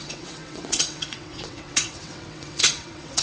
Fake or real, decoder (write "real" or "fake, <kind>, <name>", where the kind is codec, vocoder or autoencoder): fake, vocoder, WaveNeXt